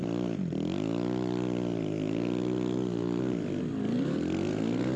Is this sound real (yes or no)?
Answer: yes